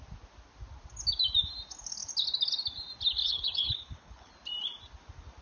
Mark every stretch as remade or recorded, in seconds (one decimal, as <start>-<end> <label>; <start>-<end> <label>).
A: 0.0-3.2 recorded; 3.2-4.3 remade; 4.3-5.4 recorded